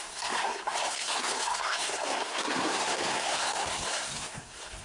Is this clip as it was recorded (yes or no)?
no